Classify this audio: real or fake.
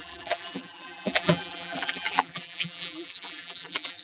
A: fake